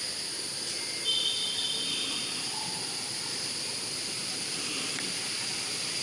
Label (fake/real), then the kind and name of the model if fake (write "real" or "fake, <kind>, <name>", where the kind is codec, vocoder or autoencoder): real